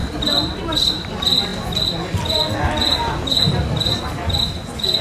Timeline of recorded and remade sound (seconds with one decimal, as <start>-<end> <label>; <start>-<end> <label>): 0.0-0.6 remade; 0.6-5.0 recorded